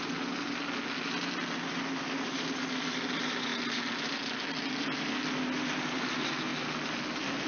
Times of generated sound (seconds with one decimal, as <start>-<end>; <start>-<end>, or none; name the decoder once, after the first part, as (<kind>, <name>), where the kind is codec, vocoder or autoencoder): none

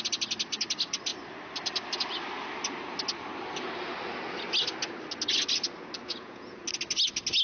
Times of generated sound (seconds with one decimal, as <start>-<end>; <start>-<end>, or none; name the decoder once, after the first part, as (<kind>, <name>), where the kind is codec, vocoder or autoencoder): 6.0-6.6 (vocoder, Vocos)

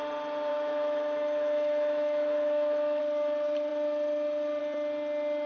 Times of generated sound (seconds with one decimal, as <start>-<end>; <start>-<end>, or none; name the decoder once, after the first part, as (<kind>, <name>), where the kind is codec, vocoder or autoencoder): 0.5-3.0 (autoencoder, DAC-VAE)

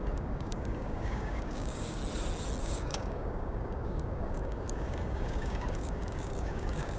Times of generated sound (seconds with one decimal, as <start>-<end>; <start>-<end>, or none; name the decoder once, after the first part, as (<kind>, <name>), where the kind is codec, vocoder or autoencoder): 0.0-2.0 (codec, DAC); 2.6-7.0

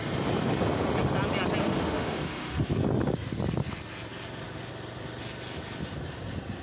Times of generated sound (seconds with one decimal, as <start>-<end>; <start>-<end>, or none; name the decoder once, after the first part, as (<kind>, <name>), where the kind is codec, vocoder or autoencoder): 1.6-2.7 (autoencoder, DAC-VAE)

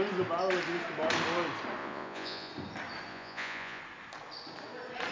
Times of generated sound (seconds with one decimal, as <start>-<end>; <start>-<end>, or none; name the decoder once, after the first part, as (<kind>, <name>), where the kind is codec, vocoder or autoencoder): 1.8-2.5 (vocoder, Vocos); 3.1-3.8